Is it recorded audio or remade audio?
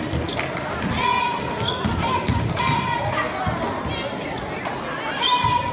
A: recorded